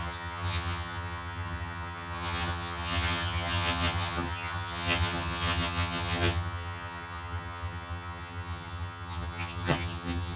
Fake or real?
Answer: fake